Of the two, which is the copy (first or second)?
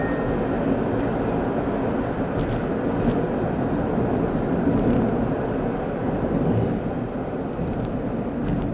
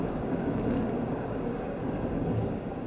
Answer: second